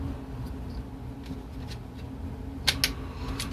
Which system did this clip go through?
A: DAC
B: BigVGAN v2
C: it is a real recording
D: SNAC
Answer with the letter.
C